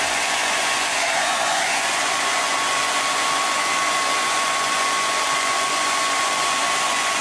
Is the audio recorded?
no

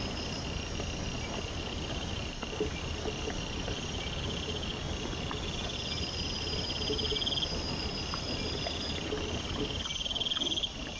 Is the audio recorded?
yes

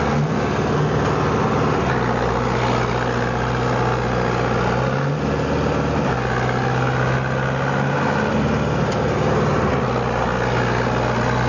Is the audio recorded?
yes